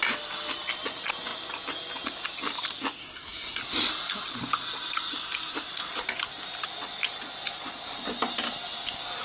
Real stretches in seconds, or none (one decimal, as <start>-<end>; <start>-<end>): 0.0-3.0; 3.6-9.2